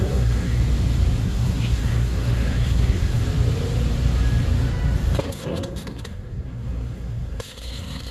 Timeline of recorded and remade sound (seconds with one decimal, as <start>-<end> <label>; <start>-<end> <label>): 0.0-0.6 remade; 0.6-1.2 recorded; 1.2-3.2 remade; 3.2-5.2 recorded; 5.2-8.1 remade